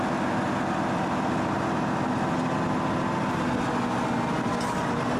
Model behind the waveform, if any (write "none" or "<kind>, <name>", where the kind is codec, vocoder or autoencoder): none